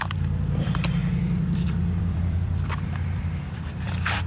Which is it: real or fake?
fake